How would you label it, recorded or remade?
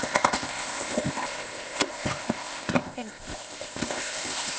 remade